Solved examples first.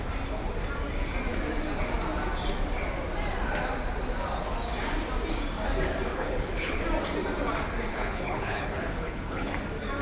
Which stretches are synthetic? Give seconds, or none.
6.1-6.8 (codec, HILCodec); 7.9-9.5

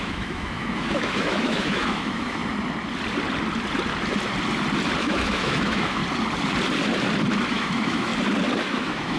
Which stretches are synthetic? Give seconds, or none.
0.0-2.4 (autoencoder, DAC-VAE); 5.0-6.0; 7.5-8.1; 8.6-9.2

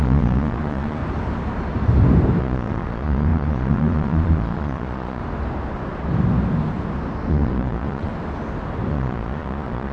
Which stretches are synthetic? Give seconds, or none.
0.0-1.0 (vocoder, Vocos); 2.4-5.2; 7.3-8.1; 8.9-9.9

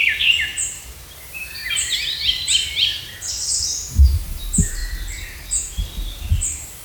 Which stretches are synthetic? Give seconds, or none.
0.0-4.8 (vocoder, BigVGAN v2); 5.7-6.8

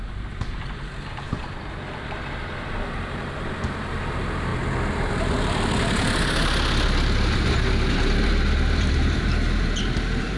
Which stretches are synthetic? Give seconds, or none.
0.0-4.5 (vocoder, BigVGAN v2); 5.1-10.4

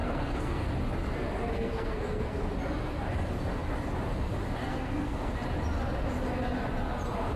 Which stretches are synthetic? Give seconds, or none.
0.0-0.7 (codec, SNAC); 1.5-2.4; 4.6-5.3

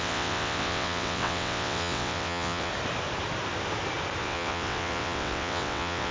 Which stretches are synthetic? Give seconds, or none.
0.0-2.7 (vocoder, WaveNeXt); 4.2-6.1

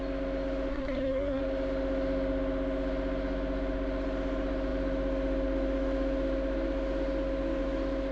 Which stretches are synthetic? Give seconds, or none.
0.7-1.4 (codec, SNAC)